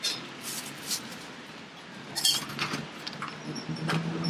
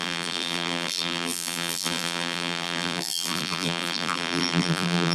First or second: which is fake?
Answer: second